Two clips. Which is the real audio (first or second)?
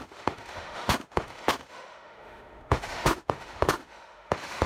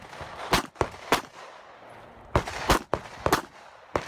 second